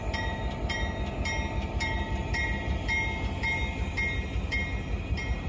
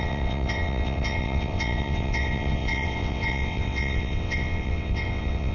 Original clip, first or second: first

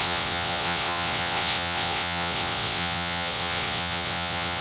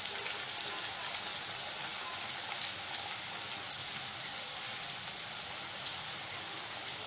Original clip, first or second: second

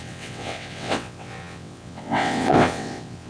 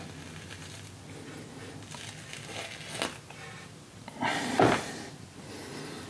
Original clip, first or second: second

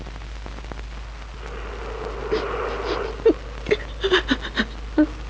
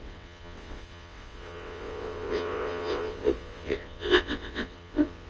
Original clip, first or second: first